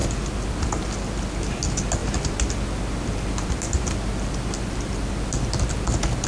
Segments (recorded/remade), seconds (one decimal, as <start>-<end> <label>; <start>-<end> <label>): 0.0-1.4 remade; 1.4-2.0 recorded; 2.0-5.8 remade; 5.8-6.3 recorded